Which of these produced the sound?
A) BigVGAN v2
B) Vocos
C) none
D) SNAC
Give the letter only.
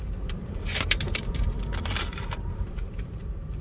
A